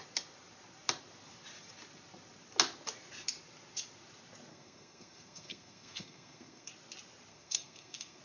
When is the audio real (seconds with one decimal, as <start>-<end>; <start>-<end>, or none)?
0.0-4.5; 6.7-7.3